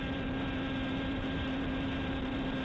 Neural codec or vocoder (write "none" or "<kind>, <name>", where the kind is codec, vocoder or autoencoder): vocoder, BigVGAN v2